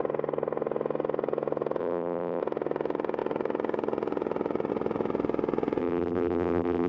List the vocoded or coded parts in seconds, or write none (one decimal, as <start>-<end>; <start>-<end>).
1.8-2.4; 5.8-6.9